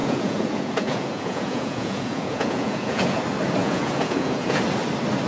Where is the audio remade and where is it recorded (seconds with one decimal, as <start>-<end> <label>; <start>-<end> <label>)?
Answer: 0.0-3.2 remade; 3.2-3.6 recorded; 3.6-4.6 remade; 4.6-5.3 recorded